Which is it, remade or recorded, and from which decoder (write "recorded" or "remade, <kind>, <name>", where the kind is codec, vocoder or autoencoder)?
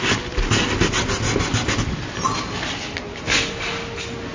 recorded